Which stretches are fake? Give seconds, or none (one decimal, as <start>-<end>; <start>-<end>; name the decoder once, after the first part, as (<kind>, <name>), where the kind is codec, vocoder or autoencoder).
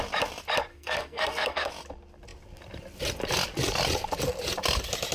0.7-1.7 (codec, SNAC)